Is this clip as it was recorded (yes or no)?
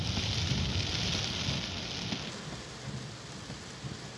yes